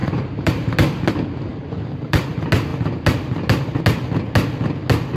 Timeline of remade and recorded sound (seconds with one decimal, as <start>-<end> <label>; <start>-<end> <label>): 0.0-0.5 remade; 0.5-1.5 recorded; 1.5-2.3 remade; 2.3-5.2 recorded

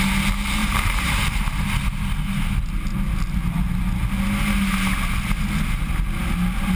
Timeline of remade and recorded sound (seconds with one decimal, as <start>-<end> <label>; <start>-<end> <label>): 0.0-0.6 recorded; 0.6-1.4 remade; 1.4-6.8 recorded

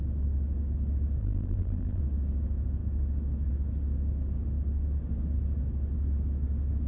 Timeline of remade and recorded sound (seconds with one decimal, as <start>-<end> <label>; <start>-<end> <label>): 0.0-1.2 recorded; 1.2-2.0 remade; 2.0-6.9 recorded

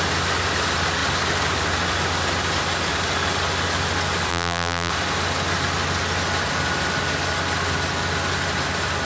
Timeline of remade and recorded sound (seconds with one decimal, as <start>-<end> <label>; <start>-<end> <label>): 0.0-4.3 recorded; 4.3-4.9 remade; 4.9-9.0 recorded

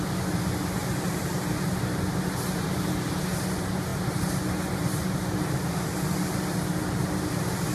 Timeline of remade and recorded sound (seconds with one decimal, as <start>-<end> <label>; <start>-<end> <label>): 0.0-0.8 recorded; 0.8-1.4 remade; 1.4-7.7 recorded

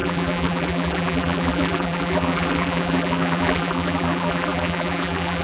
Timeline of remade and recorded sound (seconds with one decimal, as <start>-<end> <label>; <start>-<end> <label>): 0.0-5.4 remade

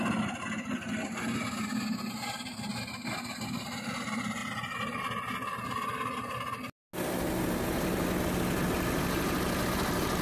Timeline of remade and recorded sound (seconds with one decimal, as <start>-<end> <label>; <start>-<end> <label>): 0.0-10.2 recorded